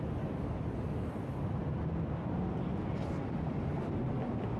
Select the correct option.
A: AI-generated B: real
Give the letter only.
B